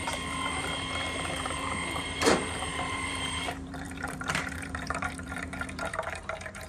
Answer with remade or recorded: remade